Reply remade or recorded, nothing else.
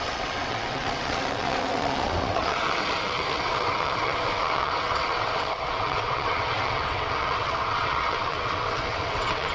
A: remade